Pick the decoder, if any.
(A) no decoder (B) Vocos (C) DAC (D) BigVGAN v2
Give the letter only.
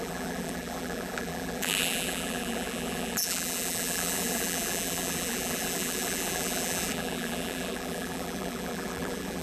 D